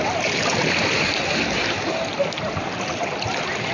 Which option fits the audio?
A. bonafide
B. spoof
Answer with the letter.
A